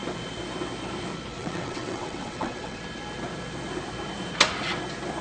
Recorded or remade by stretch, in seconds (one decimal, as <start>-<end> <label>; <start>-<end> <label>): 0.0-1.3 recorded; 1.3-2.8 remade; 2.8-5.2 recorded